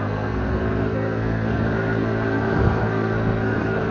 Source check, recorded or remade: remade